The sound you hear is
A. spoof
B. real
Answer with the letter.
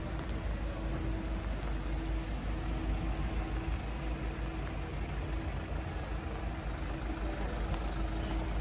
B